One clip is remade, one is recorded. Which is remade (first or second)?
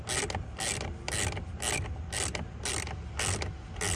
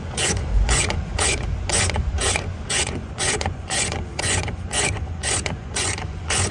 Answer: second